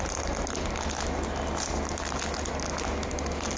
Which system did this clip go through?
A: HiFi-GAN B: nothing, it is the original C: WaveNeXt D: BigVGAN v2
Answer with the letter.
B